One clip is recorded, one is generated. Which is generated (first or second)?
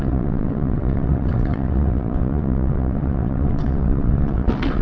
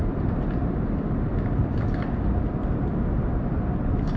first